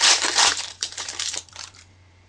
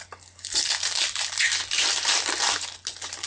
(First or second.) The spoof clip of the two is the first